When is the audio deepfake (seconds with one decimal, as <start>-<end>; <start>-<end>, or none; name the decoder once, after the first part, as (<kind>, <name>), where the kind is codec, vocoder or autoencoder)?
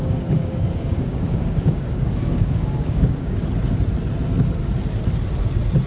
0.0-3.4 (codec, DAC)